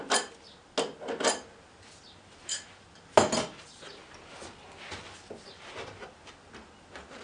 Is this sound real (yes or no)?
yes